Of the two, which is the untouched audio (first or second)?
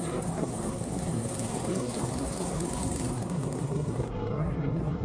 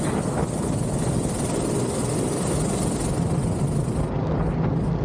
second